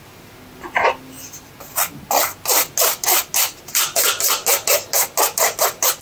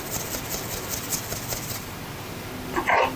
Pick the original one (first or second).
first